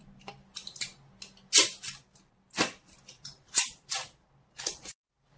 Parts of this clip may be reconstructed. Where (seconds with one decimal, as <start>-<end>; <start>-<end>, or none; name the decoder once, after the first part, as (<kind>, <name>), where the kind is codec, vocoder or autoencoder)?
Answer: none

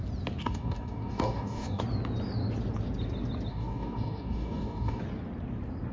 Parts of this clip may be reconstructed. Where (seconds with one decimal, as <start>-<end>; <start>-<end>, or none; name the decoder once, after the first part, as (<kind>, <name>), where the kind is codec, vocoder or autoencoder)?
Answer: 0.4-1.8 (codec, DAC); 3.5-5.0

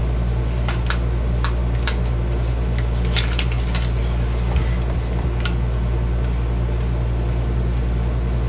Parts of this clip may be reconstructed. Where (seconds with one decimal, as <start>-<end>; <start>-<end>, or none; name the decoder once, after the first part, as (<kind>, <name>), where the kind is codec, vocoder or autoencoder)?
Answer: none

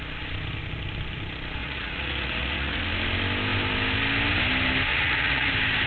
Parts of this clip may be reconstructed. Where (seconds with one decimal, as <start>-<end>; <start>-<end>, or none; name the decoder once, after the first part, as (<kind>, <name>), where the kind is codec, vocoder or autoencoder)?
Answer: 1.6-2.8 (vocoder, Vocos); 4.9-5.5

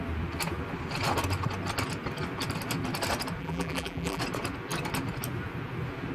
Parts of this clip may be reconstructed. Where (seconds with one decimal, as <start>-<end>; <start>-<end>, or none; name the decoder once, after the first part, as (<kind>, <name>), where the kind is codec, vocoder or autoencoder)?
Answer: 3.4-4.2 (vocoder, BigVGAN v2)

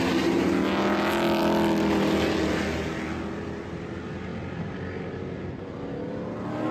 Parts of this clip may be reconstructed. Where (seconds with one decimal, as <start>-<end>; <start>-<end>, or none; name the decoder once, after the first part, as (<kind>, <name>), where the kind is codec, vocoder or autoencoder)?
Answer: none

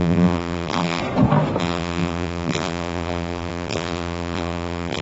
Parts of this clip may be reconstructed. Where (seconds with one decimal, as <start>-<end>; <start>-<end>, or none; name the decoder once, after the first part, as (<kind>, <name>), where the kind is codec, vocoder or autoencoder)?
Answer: 0.0-1.0 (vocoder, BigVGAN v2); 1.6-5.0

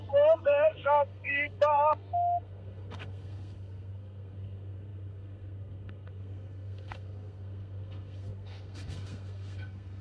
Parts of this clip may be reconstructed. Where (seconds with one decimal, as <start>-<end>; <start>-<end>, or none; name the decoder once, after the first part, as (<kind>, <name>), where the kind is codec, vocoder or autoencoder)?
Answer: 0.0-10.0 (codec, SNAC)